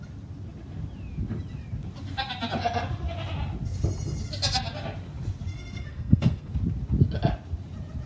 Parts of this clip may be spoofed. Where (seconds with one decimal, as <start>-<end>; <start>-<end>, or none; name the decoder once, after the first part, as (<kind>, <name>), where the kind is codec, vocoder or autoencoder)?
5.5-6.5 (codec, SNAC)